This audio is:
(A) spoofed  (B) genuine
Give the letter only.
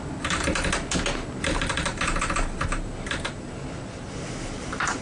B